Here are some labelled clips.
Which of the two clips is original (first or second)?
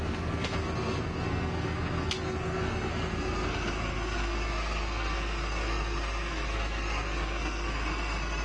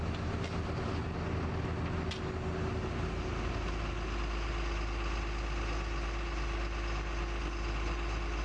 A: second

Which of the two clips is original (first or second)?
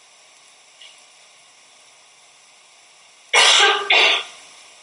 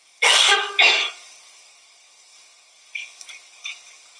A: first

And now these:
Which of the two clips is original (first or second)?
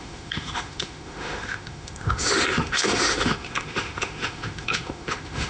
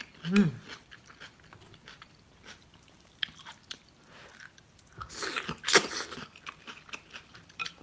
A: second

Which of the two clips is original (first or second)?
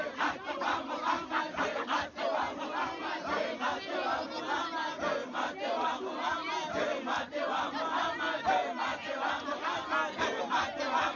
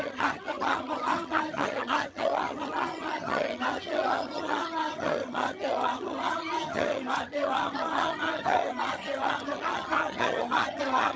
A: first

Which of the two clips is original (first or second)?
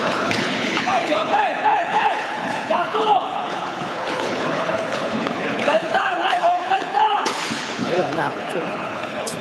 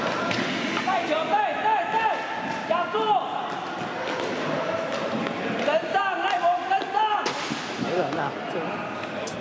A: second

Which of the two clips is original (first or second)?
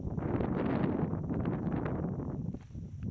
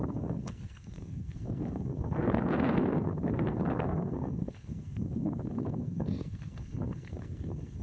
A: first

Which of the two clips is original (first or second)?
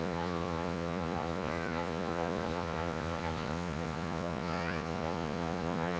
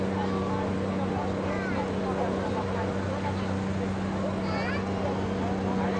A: second